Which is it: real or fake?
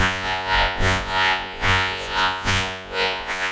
fake